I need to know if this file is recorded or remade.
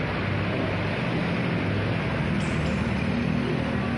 recorded